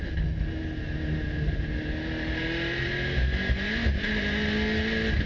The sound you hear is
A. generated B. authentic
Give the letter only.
B